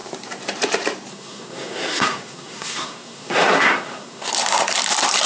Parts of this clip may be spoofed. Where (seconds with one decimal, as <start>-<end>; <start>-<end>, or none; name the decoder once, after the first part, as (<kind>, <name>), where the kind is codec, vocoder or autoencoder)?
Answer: 1.1-4.3 (codec, SNAC)